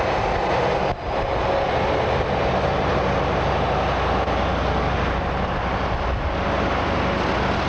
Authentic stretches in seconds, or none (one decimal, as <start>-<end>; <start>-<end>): 0.0-7.7